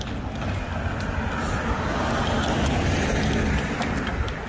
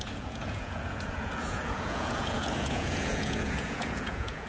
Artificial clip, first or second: second